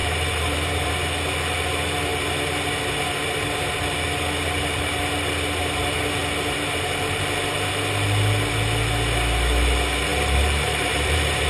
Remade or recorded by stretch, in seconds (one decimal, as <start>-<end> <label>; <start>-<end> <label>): 0.0-0.9 remade; 0.9-10.1 recorded; 10.1-11.5 remade